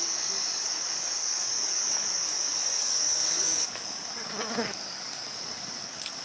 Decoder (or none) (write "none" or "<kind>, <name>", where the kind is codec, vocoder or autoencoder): codec, DAC